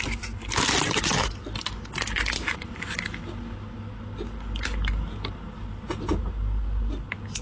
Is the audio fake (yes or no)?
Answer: no